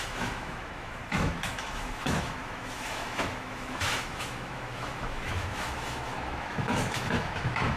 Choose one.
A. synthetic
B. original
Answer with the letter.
A